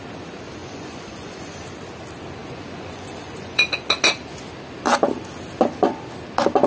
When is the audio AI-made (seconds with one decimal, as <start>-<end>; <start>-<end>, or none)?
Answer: 0.6-1.6; 2.4-3.6

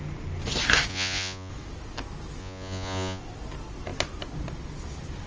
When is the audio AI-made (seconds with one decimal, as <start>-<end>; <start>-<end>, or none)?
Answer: 0.9-1.5; 2.4-3.2